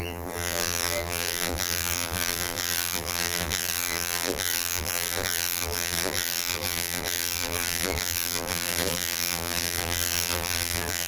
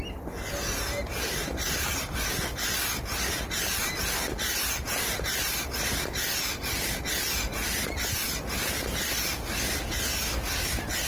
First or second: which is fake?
first